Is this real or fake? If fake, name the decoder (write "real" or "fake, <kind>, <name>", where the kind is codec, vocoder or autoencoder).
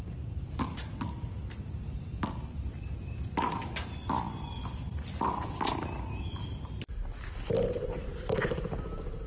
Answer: real